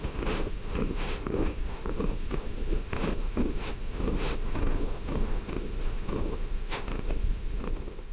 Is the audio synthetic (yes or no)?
yes